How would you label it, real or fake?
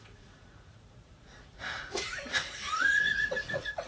fake